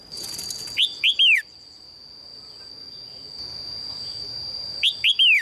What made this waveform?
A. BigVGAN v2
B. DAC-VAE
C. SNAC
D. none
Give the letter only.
D